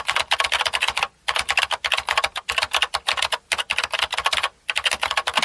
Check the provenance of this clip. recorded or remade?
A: recorded